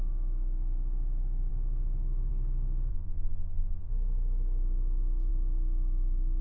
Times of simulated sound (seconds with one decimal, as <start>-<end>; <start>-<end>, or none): 2.9-3.9

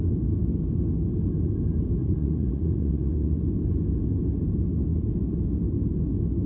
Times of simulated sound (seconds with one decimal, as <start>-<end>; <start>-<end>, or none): 2.0-3.4

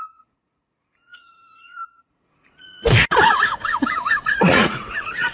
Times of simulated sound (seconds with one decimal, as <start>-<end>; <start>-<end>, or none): 0.0-5.3

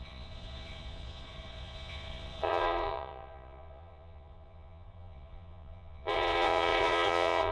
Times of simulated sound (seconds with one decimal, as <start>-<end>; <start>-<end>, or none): 0.0-7.5

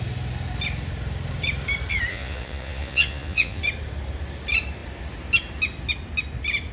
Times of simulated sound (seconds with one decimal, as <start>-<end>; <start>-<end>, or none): 2.1-3.6